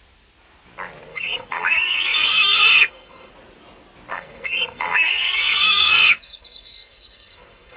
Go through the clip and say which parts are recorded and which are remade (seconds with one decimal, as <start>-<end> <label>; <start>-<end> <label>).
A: 0.0-1.1 recorded; 1.1-3.3 remade; 3.3-4.1 recorded; 4.1-7.8 remade